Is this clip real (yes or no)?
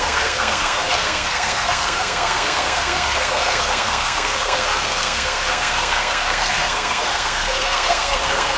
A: no